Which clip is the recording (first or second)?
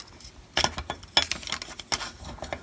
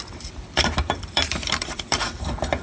first